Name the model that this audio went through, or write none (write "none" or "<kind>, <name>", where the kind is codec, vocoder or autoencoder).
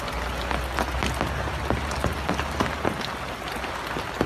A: none